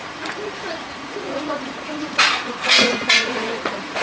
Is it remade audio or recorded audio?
remade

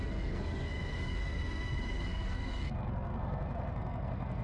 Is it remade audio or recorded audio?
remade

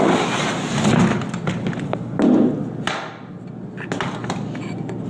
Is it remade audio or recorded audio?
recorded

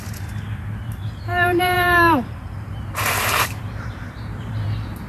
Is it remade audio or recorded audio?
remade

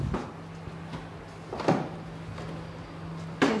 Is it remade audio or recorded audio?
recorded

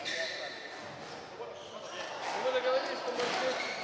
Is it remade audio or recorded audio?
recorded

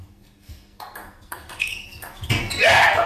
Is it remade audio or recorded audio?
remade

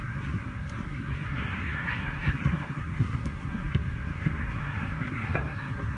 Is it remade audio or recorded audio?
remade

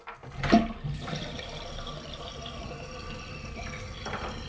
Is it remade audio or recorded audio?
recorded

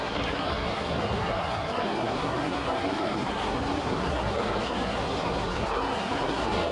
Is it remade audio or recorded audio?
remade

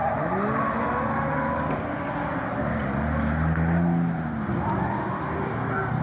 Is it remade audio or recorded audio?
recorded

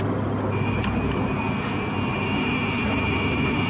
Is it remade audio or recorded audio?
recorded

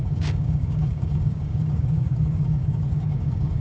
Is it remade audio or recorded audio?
remade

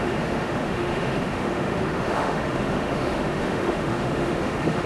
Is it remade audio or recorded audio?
remade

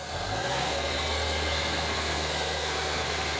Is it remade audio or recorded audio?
remade